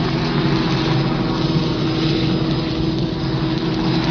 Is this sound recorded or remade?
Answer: recorded